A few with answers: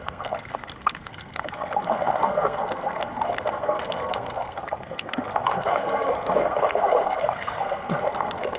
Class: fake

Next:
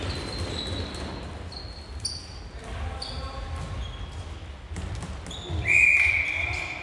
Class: real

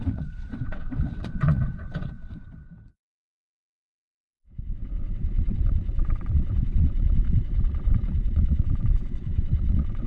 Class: fake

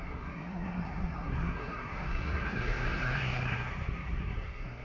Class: fake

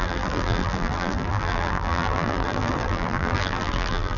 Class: fake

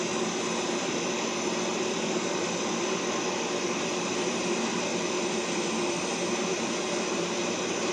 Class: real